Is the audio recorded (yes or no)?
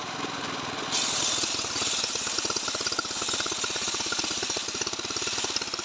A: yes